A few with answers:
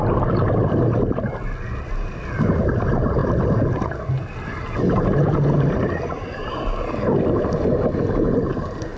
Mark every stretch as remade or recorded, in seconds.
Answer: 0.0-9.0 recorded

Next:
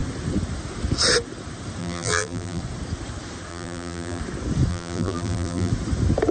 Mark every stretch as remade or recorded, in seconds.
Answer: 0.0-1.8 recorded; 1.8-2.6 remade; 2.6-3.5 recorded; 3.5-4.2 remade; 4.2-4.7 recorded; 4.7-5.7 remade; 5.7-6.3 recorded